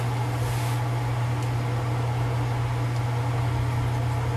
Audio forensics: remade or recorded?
recorded